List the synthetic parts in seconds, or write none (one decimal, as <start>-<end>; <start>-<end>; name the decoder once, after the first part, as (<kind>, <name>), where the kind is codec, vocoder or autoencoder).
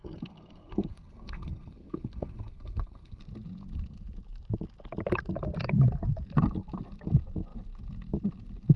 0.0-3.2 (codec, SNAC)